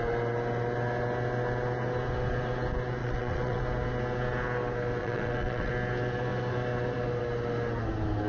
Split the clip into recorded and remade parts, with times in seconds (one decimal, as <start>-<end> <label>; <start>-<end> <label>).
0.0-3.0 recorded; 3.0-3.6 remade; 3.6-5.0 recorded; 5.0-5.7 remade; 5.7-8.3 recorded